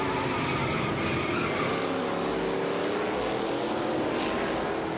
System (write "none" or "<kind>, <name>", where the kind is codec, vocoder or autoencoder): none